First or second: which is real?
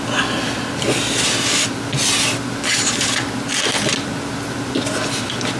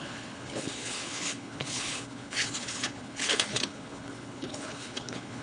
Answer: first